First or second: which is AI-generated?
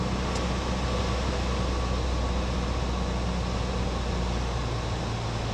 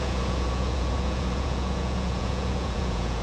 second